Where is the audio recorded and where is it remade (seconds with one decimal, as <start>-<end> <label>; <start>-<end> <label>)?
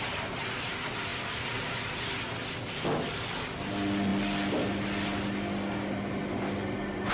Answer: 0.0-7.1 recorded